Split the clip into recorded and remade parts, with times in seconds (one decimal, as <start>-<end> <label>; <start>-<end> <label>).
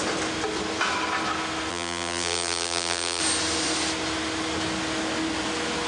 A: 0.0-1.7 recorded; 1.7-3.2 remade; 3.2-5.9 recorded